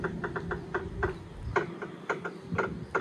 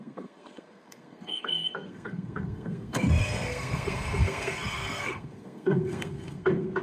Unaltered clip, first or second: first